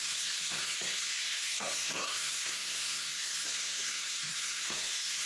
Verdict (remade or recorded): remade